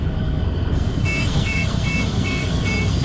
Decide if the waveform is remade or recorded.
remade